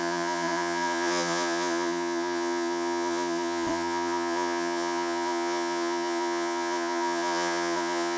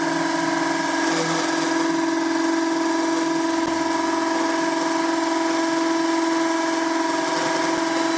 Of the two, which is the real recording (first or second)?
second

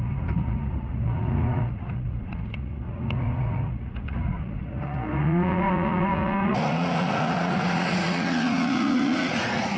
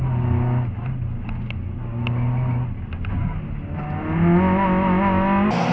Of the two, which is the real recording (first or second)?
second